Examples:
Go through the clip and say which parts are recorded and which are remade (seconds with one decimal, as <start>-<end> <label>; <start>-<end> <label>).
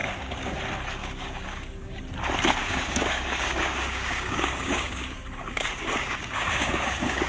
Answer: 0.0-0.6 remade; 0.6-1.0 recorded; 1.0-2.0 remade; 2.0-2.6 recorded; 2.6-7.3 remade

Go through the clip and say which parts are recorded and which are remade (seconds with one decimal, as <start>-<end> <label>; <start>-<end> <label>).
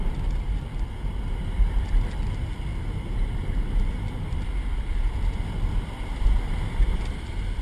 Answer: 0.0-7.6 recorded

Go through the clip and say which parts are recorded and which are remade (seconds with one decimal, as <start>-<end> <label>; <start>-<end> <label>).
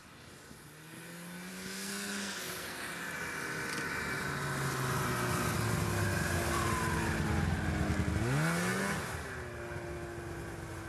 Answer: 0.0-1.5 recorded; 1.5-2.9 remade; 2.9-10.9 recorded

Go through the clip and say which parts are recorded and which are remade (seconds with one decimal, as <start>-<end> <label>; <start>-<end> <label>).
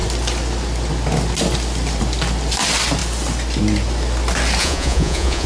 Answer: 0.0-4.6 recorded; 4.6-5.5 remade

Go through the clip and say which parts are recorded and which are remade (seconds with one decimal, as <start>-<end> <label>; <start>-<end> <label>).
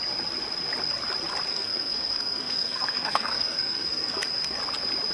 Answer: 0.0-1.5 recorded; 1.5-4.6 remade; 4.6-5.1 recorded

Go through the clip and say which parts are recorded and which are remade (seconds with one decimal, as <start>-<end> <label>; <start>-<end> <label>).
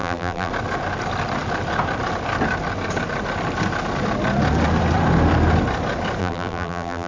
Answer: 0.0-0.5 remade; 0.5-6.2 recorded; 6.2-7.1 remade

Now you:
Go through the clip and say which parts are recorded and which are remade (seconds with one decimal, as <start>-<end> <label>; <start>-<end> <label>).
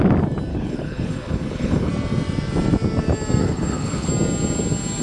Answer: 0.0-0.5 recorded; 0.5-1.9 remade; 1.9-3.4 recorded; 3.4-4.1 remade; 4.1-5.0 recorded